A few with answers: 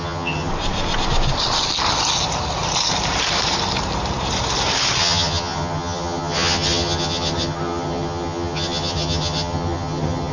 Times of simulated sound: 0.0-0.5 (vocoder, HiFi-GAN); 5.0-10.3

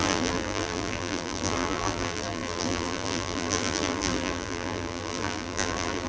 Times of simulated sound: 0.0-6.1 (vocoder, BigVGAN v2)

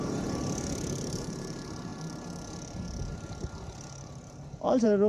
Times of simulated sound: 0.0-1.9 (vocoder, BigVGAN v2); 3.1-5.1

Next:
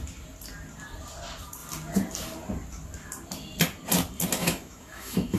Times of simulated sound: 4.4-5.4 (autoencoder, DAC-VAE)

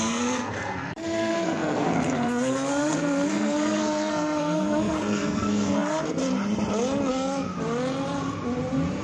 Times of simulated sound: 0.0-6.2 (codec, SNAC); 7.1-7.5

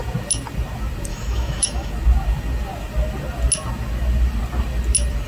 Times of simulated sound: 1.1-1.9 (autoencoder, DAC-VAE)